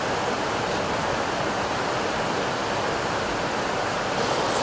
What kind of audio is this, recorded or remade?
recorded